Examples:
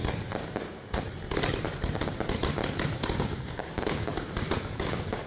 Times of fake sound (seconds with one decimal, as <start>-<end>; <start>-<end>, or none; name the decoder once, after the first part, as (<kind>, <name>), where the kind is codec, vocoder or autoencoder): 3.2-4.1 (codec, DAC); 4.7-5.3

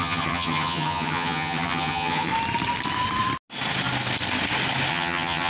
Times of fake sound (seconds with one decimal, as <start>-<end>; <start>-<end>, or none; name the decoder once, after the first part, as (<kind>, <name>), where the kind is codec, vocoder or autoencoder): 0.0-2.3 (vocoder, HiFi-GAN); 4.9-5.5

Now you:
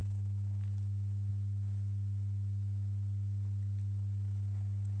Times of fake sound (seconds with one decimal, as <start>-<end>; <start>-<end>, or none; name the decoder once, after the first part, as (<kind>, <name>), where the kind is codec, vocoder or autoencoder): none

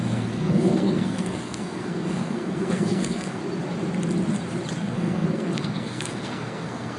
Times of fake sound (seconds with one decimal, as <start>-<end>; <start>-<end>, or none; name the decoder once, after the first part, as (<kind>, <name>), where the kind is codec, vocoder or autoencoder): 0.0-3.4 (codec, SNAC); 4.8-7.0

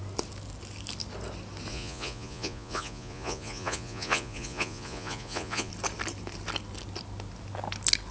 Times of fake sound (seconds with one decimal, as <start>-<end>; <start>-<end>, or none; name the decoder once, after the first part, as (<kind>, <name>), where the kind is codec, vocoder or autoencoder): 1.7-5.7 (vocoder, Vocos)

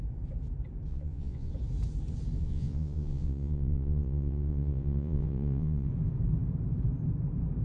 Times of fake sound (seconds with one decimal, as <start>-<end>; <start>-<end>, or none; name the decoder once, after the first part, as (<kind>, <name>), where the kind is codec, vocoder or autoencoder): 0.9-1.5 (vocoder, Vocos); 2.4-5.9

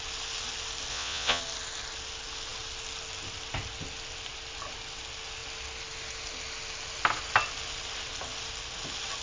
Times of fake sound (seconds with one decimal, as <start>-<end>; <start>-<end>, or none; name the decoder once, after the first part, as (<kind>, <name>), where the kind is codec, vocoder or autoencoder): 0.9-1.4 (vocoder, Vocos)